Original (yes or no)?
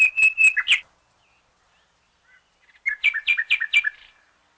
yes